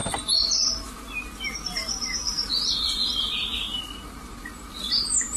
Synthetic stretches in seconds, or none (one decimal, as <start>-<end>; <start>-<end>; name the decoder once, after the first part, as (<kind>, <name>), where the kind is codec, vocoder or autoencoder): 0.0-0.9 (vocoder, BigVGAN v2); 2.2-3.8